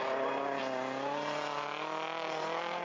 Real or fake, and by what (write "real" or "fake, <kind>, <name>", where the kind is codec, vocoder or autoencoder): real